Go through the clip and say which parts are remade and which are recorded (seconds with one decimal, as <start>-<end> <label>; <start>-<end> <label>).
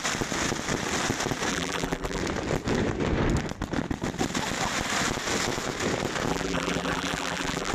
0.0-1.5 recorded; 1.5-2.2 remade; 2.2-6.3 recorded; 6.3-7.7 remade